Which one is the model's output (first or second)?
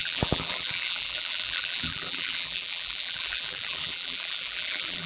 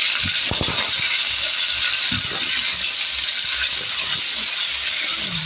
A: first